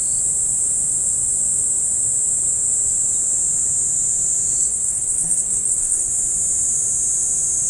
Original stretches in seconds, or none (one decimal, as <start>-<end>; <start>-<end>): 0.0-4.6; 6.1-7.7